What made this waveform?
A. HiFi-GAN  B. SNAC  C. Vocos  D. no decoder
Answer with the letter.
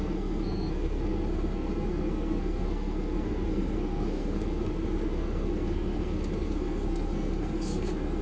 B